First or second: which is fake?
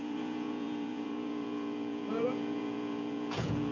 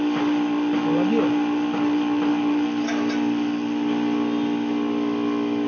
first